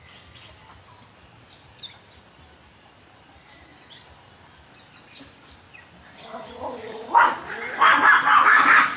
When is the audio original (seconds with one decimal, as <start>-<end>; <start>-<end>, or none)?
0.0-9.0